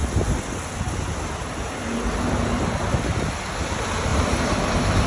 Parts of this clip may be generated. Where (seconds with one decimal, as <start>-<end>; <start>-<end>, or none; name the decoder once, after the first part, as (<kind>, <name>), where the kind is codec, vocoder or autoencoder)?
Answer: 4.1-5.1 (vocoder, BigVGAN v2)